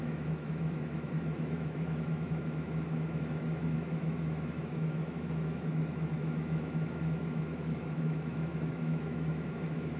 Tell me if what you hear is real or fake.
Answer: fake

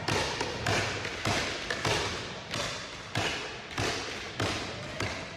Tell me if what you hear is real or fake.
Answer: real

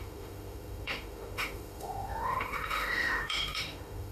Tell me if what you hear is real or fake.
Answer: fake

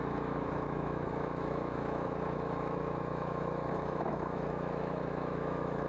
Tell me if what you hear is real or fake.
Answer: fake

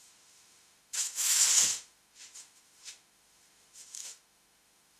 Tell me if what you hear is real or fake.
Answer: fake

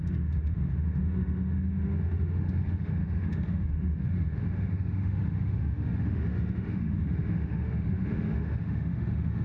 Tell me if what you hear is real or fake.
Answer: fake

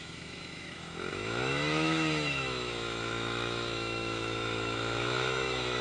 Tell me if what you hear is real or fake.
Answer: fake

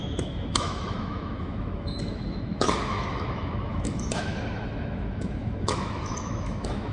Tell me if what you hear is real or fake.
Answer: fake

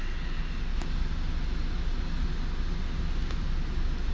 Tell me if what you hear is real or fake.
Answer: real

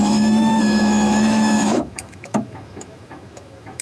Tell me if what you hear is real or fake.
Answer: fake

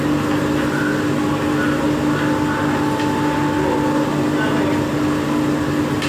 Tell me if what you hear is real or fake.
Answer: real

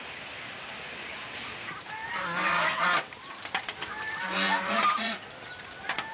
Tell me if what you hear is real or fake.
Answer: real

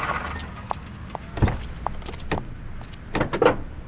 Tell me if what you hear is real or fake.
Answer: real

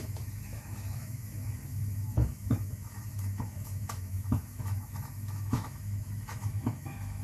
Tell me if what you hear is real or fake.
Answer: fake